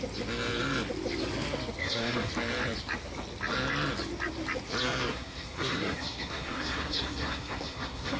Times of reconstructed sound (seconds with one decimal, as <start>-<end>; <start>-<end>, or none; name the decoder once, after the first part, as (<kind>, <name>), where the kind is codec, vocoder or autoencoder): 1.8-2.3 (codec, SNAC); 5.1-8.2